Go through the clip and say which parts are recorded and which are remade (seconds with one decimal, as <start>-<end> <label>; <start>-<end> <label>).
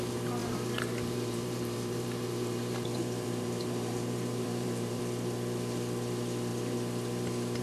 0.0-0.4 recorded; 0.4-5.0 remade; 5.0-7.6 recorded